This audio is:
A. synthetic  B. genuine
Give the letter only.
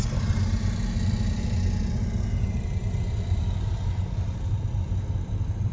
B